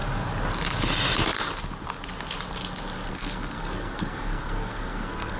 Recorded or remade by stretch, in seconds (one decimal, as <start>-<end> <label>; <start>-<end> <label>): 0.0-3.1 recorded; 3.1-5.4 remade